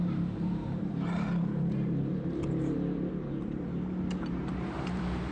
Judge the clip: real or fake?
fake